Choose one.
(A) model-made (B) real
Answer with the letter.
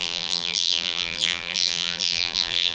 A